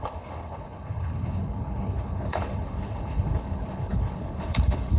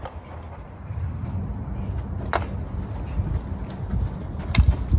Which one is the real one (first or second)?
second